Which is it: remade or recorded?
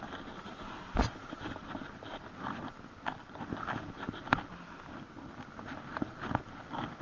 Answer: recorded